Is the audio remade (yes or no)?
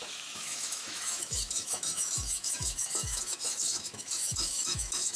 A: yes